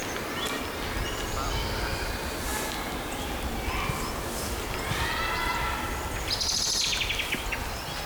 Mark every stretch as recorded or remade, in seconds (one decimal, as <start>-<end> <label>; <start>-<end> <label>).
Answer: 0.0-8.1 recorded

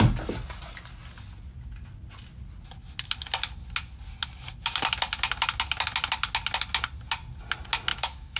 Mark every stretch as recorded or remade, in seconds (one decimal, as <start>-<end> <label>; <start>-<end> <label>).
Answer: 0.0-7.9 recorded; 7.9-8.4 remade

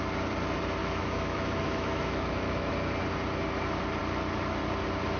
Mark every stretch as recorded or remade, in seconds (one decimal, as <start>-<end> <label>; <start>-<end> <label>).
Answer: 0.0-0.8 recorded; 0.8-2.7 remade; 2.7-5.2 recorded

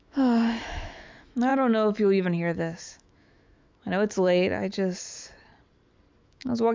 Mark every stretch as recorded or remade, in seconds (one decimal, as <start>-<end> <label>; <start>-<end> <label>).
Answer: 0.0-4.7 remade; 4.7-6.2 recorded; 6.2-6.7 remade

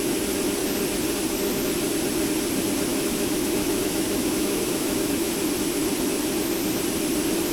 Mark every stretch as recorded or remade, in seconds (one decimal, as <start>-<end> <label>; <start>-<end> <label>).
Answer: 0.0-2.9 recorded; 2.9-5.3 remade; 5.3-7.5 recorded

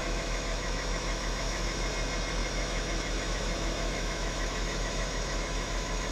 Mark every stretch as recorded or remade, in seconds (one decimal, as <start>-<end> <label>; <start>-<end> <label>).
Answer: 0.0-1.9 remade; 1.9-2.4 recorded; 2.4-6.1 remade

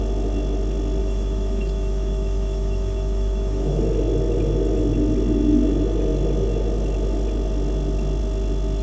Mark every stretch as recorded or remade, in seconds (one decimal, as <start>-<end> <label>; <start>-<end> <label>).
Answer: 0.0-1.0 recorded; 1.0-3.8 remade; 3.8-8.8 recorded